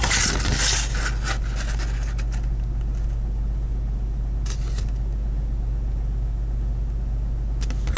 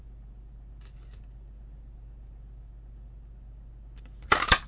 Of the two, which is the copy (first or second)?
second